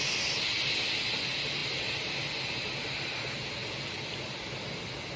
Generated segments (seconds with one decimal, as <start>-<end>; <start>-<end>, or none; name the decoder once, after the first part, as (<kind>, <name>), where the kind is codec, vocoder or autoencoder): 3.6-4.1 (vocoder, BigVGAN v2)